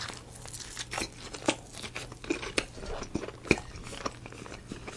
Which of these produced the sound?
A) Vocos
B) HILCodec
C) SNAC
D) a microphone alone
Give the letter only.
D